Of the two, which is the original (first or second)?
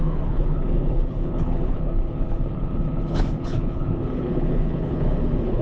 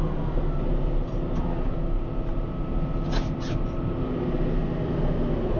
second